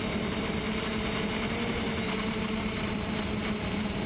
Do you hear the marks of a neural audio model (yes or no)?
yes